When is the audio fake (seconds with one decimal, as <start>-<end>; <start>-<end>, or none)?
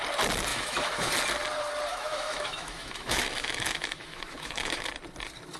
0.5-1.1; 1.9-4.9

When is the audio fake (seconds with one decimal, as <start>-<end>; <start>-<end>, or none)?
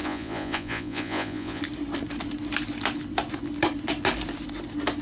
0.0-1.6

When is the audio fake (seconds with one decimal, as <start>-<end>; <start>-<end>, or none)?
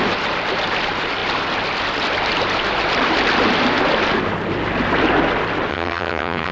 5.7-6.5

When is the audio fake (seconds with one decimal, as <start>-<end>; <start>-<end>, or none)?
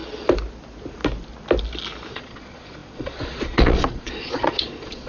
2.1-5.1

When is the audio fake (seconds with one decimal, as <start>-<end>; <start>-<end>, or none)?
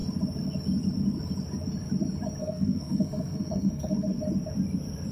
2.4-4.2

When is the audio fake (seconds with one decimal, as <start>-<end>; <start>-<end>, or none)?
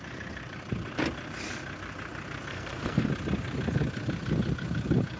2.5-3.1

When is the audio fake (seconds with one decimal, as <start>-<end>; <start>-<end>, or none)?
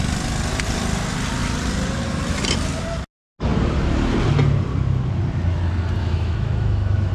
6.0-7.1